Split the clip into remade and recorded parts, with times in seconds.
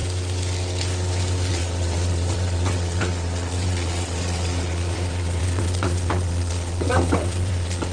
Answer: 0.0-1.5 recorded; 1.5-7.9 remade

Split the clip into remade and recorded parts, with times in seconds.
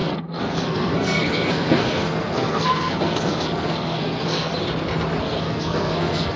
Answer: 0.0-4.5 remade; 4.5-5.2 recorded; 5.2-6.4 remade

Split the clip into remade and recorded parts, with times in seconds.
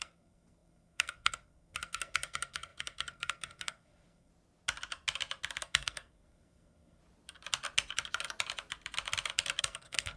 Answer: 0.0-4.3 remade; 4.3-5.6 recorded; 5.6-7.0 remade; 7.0-9.6 recorded; 9.6-10.2 remade